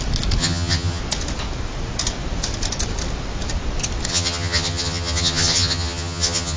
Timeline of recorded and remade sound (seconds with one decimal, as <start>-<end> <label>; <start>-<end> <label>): 0.0-0.4 recorded; 0.4-1.0 remade; 1.0-4.1 recorded; 4.1-6.6 remade